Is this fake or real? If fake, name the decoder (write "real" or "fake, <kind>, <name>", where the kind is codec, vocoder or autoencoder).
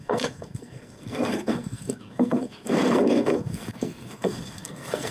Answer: fake, codec, SNAC